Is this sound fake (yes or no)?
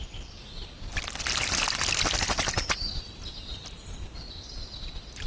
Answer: no